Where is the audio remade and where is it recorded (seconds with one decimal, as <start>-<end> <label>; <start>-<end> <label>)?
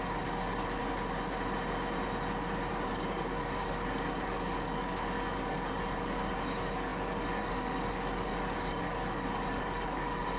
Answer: 0.0-0.8 remade; 0.8-2.7 recorded; 2.7-10.4 remade